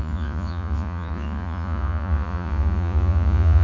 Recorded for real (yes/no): no